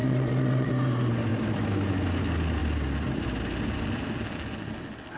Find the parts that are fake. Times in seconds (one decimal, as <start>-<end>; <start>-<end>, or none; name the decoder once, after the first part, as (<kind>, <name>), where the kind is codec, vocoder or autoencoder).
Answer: 0.0-0.7 (vocoder, Vocos)